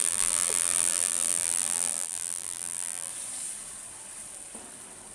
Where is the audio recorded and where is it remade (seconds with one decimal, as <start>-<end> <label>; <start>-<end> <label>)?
0.0-3.1 remade; 3.1-5.1 recorded